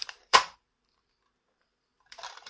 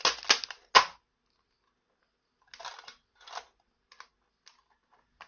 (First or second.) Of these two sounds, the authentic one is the second